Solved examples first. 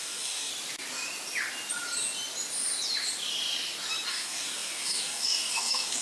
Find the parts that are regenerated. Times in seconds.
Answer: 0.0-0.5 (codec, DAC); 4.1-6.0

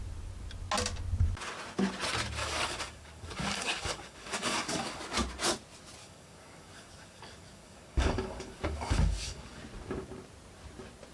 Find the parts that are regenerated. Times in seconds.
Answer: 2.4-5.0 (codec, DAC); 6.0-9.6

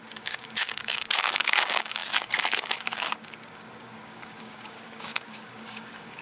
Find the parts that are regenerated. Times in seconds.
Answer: 0.0-6.2 (codec, DAC)